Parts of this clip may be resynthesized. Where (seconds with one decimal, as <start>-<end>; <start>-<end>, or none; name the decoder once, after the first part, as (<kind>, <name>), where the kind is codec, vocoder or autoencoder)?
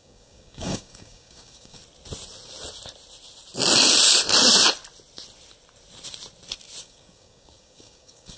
0.0-1.8 (codec, DAC); 6.8-8.4